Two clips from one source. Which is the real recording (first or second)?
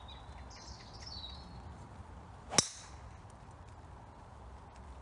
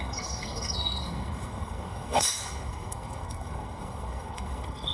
first